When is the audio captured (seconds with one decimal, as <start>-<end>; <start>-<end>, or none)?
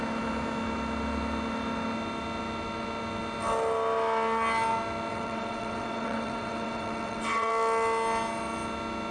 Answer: 0.0-5.1; 7.5-9.1